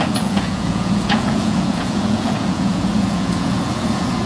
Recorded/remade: remade